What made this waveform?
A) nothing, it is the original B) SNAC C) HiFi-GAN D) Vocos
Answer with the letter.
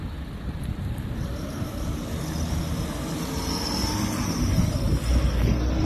A